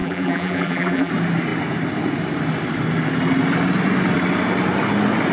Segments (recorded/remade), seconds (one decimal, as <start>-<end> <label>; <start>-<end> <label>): 0.0-1.1 remade; 1.1-5.3 recorded